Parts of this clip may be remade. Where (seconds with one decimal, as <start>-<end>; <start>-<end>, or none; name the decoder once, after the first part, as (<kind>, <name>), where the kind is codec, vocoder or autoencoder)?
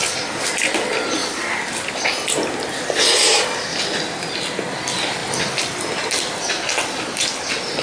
none